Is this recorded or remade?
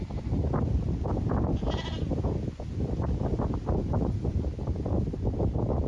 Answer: recorded